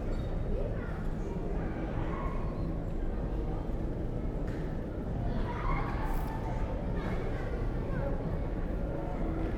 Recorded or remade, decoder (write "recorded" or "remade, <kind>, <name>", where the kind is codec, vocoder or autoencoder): recorded